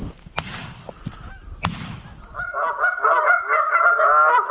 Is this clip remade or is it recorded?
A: recorded